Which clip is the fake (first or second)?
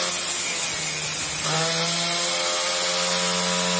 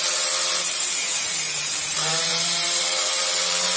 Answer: second